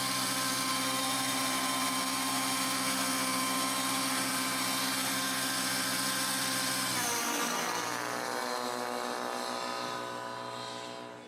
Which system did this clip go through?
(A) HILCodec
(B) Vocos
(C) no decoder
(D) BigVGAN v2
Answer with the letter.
C